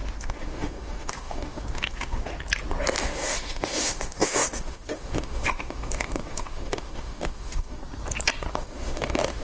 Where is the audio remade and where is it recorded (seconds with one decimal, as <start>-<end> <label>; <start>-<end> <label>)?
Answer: 0.0-2.3 remade; 2.3-3.0 recorded; 3.0-7.8 remade; 7.8-8.5 recorded; 8.5-9.4 remade